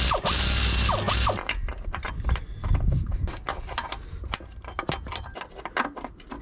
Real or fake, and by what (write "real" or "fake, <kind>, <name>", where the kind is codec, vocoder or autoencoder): real